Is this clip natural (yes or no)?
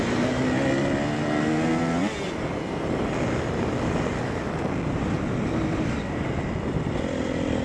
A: yes